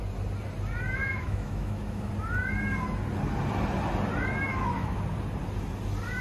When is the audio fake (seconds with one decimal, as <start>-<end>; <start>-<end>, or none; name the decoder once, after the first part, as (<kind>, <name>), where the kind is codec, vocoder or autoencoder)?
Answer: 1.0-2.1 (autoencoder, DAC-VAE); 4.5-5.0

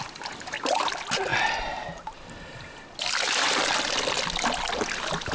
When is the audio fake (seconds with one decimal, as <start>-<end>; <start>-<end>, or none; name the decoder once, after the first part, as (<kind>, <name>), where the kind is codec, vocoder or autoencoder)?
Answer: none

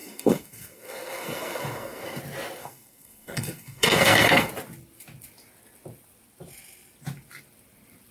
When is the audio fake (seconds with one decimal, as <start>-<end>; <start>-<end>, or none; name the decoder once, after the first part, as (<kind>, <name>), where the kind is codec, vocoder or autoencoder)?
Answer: 0.0-2.2 (codec, SNAC); 2.6-4.5

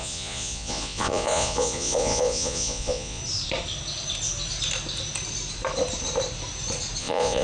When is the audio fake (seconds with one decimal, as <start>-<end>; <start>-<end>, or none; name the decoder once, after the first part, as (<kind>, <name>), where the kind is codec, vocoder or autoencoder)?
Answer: 0.0-3.2 (vocoder, Vocos); 7.0-7.4

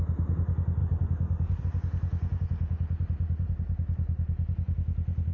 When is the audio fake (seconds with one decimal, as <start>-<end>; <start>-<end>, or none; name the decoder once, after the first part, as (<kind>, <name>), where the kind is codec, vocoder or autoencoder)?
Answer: 0.8-1.6 (codec, DAC)

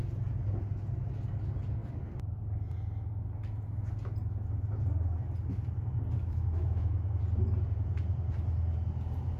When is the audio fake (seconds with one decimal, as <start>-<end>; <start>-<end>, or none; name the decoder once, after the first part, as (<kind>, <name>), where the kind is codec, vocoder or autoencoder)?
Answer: 6.2-7.2 (autoencoder, DAC-VAE)

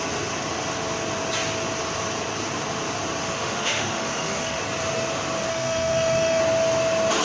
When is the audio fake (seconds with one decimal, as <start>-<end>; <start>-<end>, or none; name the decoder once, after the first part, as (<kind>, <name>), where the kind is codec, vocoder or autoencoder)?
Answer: 3.2-4.6 (autoencoder, DAC-VAE); 5.5-6.4

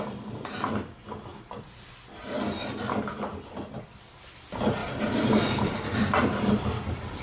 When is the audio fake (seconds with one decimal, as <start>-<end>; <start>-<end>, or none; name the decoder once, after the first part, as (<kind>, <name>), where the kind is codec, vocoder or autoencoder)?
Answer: 4.8-6.5 (vocoder, BigVGAN v2)